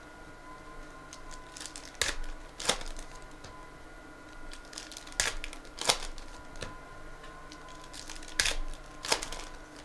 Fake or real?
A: real